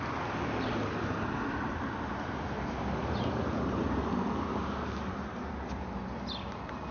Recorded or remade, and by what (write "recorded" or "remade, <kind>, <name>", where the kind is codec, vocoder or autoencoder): recorded